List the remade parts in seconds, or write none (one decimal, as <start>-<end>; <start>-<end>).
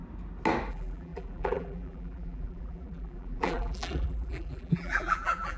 0.7-5.6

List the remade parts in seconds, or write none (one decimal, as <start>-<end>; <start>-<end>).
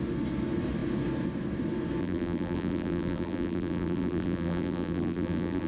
2.0-5.7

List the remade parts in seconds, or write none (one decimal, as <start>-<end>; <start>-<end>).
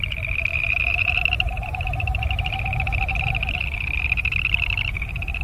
0.5-3.3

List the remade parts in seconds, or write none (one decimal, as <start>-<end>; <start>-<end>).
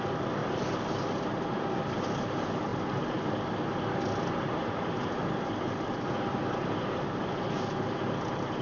none